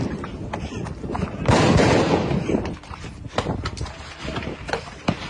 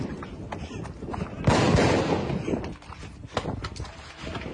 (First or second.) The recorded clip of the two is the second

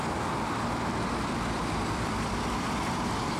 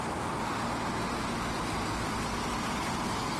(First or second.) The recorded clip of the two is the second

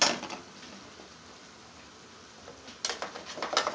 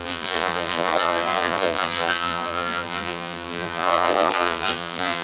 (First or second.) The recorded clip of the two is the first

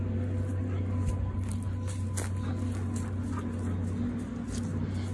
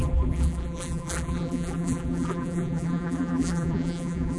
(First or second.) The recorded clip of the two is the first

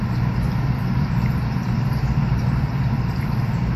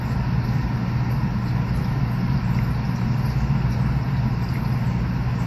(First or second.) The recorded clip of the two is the second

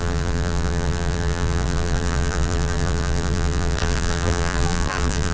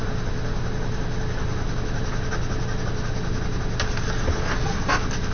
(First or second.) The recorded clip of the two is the second